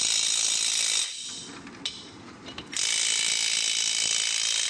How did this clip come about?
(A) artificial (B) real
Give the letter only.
B